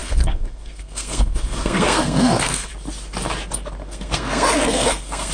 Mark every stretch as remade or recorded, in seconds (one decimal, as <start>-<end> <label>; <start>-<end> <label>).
0.0-2.7 remade; 2.7-3.8 recorded; 3.8-5.3 remade